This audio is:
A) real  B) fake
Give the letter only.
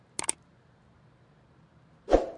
A